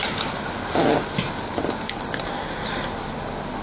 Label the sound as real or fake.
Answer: real